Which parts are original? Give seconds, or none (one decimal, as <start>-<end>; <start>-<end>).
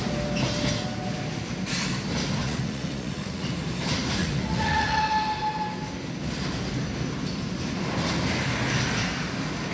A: 0.0-2.4; 3.5-4.2; 5.0-9.7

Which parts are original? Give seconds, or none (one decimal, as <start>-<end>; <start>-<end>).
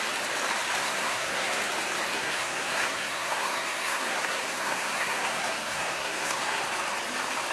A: 0.0-0.8; 1.6-2.1; 6.6-7.5